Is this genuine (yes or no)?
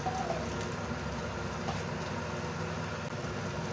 yes